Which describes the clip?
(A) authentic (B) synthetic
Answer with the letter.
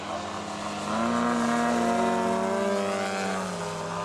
A